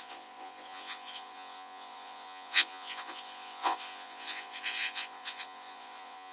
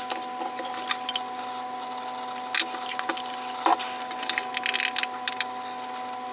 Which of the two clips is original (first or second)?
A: second